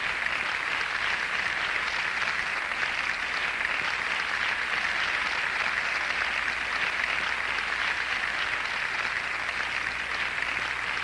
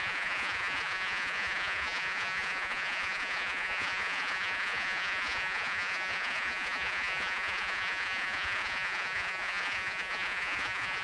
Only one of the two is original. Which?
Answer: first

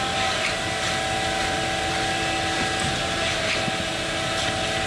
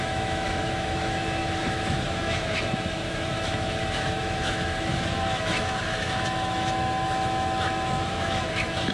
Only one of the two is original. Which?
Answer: first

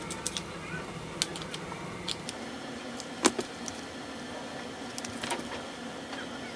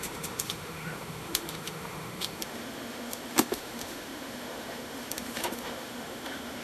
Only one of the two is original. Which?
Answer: first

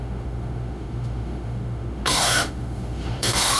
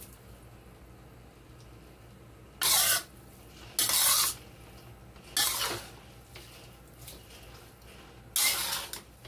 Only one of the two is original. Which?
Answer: second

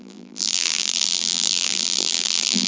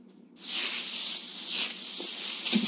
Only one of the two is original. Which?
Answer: second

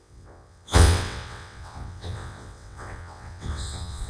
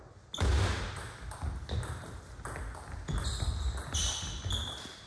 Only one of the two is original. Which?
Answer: second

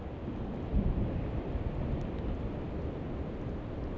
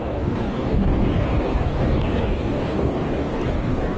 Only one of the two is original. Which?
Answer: first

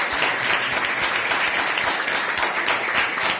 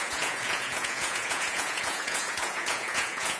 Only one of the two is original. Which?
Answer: first